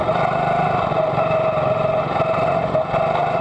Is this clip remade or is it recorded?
recorded